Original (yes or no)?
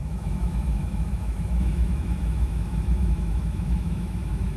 no